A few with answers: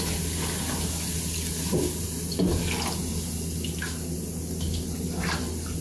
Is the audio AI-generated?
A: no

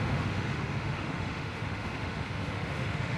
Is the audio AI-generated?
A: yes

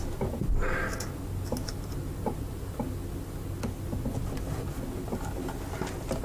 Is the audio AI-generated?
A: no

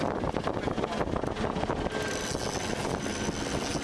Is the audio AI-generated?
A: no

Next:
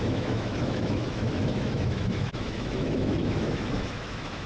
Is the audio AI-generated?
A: yes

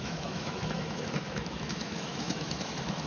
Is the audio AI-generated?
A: yes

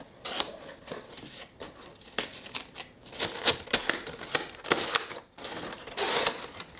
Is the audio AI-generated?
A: no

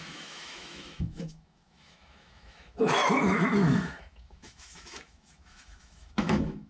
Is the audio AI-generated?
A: yes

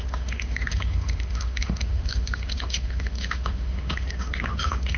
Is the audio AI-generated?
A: yes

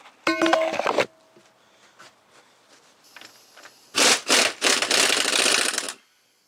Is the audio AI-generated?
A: no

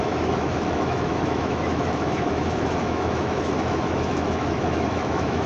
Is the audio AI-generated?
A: yes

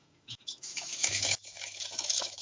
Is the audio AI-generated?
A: yes